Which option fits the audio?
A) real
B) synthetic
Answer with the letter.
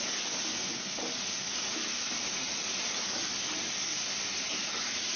A